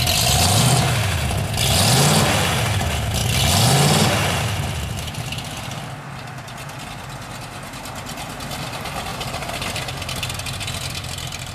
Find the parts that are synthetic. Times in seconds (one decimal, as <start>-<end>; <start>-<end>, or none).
9.1-9.9